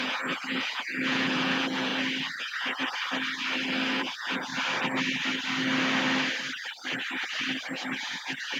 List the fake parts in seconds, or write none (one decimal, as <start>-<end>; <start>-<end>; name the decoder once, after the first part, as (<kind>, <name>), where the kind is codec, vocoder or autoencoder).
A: 0.0-1.9 (vocoder, Vocos); 2.4-2.8; 3.9-4.5; 7.7-8.6